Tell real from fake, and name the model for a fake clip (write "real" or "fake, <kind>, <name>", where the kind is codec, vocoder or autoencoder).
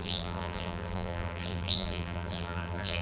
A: fake, vocoder, BigVGAN v2